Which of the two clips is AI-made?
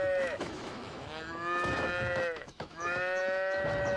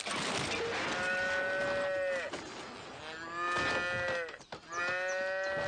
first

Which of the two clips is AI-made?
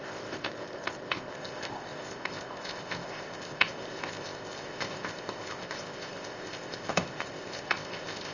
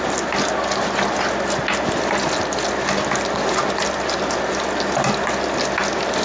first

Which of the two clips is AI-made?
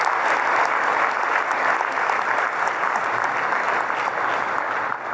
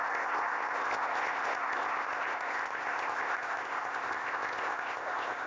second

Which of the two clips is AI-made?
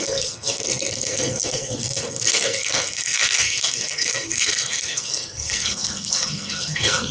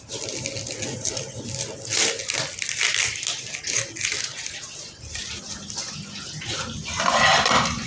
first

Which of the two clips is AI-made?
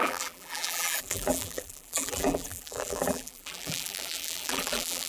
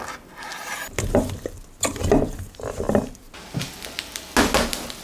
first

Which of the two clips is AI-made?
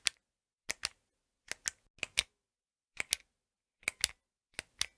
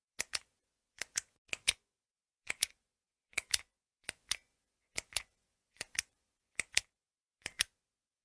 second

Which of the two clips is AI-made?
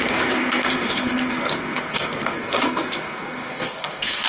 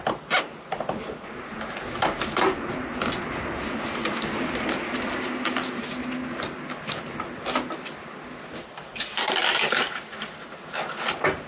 first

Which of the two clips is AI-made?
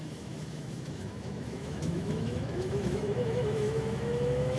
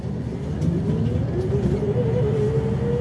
first